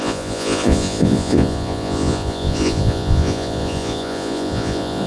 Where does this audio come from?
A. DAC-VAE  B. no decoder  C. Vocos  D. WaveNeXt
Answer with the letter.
C